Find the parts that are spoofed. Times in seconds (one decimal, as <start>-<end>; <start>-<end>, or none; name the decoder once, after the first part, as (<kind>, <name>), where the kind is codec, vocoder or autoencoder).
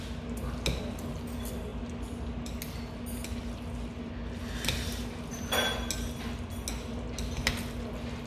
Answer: none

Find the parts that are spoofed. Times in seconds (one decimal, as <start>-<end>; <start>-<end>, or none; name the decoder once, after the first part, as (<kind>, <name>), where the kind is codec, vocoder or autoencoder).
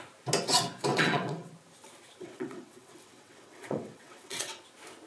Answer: 0.9-1.5 (vocoder, WaveNeXt); 2.2-4.6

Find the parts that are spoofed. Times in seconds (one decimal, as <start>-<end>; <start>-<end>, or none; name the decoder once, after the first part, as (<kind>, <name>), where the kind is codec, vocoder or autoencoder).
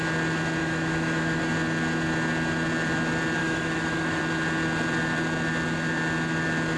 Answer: 0.6-1.4 (autoencoder, DAC-VAE); 3.4-4.2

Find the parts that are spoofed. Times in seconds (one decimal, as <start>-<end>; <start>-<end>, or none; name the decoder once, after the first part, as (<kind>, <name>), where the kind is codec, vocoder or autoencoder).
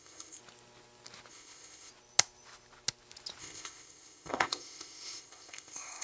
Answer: 0.0-0.4 (codec, ZipCodec); 1.3-1.9; 3.4-6.0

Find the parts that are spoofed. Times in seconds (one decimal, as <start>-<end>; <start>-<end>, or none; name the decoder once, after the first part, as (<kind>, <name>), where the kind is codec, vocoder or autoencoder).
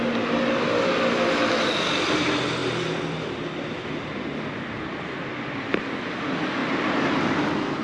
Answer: 5.3-6.1 (vocoder, BigVGAN v2); 6.6-7.2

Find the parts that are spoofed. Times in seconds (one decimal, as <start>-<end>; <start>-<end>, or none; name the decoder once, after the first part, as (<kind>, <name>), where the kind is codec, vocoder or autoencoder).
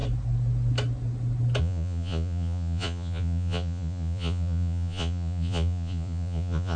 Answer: 1.6-6.8 (vocoder, Vocos)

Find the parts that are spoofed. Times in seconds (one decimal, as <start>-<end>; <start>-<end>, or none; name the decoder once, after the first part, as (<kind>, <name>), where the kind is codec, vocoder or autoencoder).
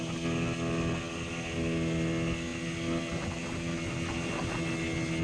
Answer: none